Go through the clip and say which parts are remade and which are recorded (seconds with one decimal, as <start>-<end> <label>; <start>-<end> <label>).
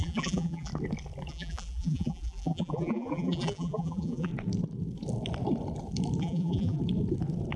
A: 0.0-0.7 remade; 0.7-1.3 recorded; 1.3-4.3 remade; 4.3-6.2 recorded; 6.2-6.8 remade; 6.8-7.6 recorded